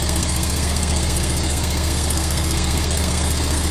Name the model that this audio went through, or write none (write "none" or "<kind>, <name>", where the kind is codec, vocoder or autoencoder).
codec, SNAC